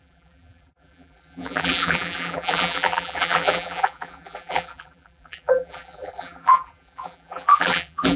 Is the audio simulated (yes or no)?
yes